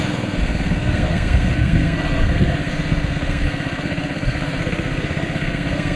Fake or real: fake